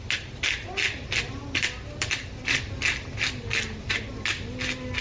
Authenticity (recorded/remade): recorded